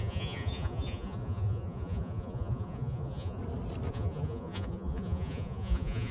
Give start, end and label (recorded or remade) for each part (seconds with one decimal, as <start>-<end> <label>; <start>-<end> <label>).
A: 0.0-3.4 remade; 3.4-3.9 recorded; 3.9-6.1 remade